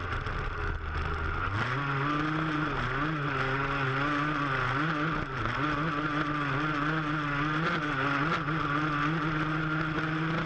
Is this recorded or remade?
recorded